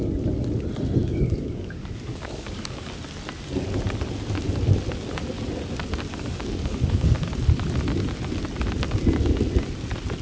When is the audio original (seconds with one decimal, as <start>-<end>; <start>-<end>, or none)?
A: 0.0-1.0; 2.9-6.1; 7.3-10.2